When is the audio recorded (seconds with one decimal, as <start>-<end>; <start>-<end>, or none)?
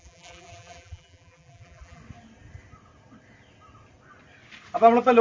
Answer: 2.0-5.2